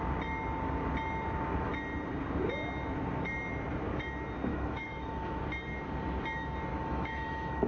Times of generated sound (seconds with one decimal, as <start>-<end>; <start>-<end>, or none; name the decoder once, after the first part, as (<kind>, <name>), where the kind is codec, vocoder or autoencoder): 4.5-5.4 (autoencoder, DAC-VAE); 6.7-7.7